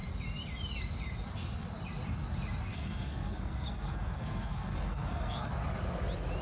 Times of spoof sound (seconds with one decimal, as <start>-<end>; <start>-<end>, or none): 2.7-5.5